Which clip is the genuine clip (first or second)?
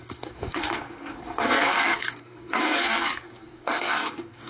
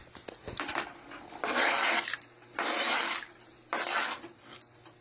second